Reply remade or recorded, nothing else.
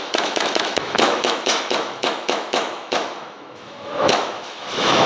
remade